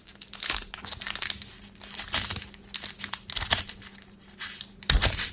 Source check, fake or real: real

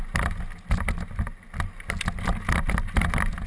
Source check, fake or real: real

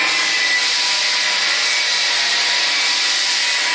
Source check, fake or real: real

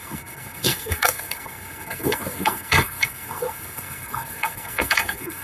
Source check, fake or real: fake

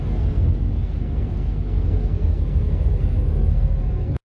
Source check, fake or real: fake